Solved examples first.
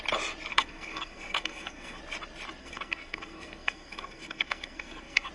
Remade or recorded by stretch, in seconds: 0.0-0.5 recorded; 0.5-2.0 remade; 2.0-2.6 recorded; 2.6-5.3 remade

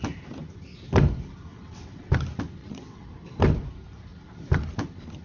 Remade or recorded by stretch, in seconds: 0.0-1.5 recorded; 1.5-2.1 remade; 2.1-2.6 recorded; 2.6-3.1 remade; 3.1-5.2 recorded

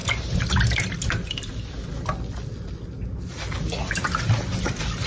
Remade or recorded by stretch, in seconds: 0.0-5.1 recorded

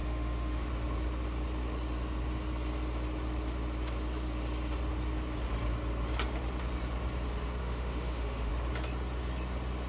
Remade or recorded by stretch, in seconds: 0.0-0.7 remade; 0.7-7.6 recorded; 7.6-8.5 remade; 8.5-9.9 recorded

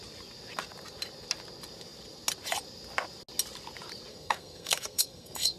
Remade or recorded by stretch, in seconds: 0.0-4.1 recorded; 4.1-5.6 remade

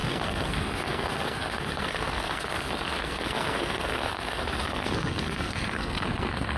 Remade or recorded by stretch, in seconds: 0.0-6.6 remade

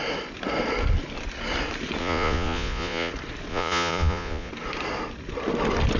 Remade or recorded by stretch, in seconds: 0.0-2.0 recorded; 2.0-3.1 remade; 3.1-3.5 recorded; 3.5-4.5 remade; 4.5-6.0 recorded